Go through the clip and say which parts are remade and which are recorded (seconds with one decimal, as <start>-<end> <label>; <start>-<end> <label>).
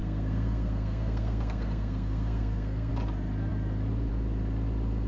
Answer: 0.0-2.9 remade; 2.9-5.1 recorded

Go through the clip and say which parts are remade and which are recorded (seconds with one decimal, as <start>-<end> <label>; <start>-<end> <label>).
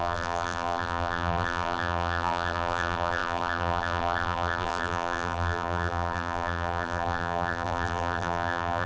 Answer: 0.0-8.9 remade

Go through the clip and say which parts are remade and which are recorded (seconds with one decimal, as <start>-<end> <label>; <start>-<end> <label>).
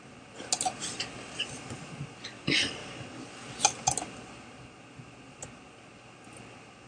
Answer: 0.0-6.9 recorded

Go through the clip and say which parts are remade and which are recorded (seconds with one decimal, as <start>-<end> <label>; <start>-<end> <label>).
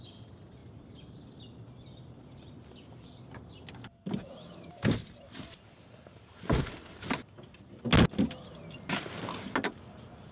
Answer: 0.0-10.3 recorded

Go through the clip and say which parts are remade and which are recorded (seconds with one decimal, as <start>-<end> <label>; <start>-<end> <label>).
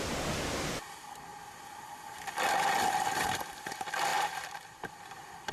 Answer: 0.0-1.3 recorded; 1.3-1.9 remade; 1.9-4.1 recorded; 4.1-4.9 remade; 4.9-5.5 recorded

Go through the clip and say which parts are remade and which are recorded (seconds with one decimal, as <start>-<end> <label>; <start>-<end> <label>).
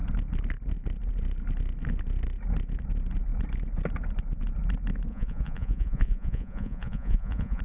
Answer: 0.0-5.1 recorded; 5.1-7.6 remade